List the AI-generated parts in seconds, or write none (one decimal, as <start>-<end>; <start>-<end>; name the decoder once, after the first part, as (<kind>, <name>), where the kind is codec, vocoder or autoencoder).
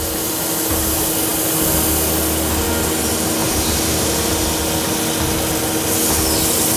3.4-4.3 (vocoder, BigVGAN v2)